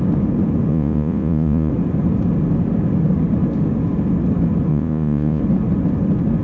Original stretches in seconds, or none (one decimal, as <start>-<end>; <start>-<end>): 0.0-0.7; 1.7-4.7; 5.4-6.4